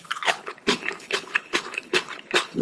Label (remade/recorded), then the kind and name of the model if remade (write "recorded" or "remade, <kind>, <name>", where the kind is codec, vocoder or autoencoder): remade, codec, HILCodec